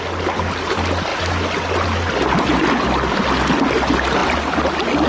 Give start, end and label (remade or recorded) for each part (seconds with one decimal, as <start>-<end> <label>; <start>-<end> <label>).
0.0-5.1 recorded